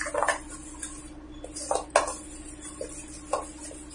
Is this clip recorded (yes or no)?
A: yes